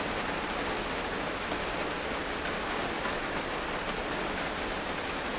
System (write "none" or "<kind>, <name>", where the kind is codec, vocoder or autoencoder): none